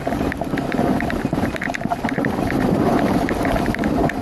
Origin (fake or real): fake